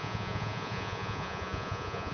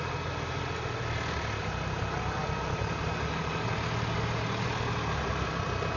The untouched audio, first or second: second